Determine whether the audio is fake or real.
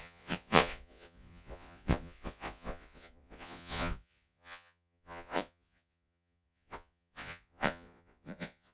fake